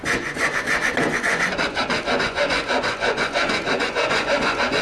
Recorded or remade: remade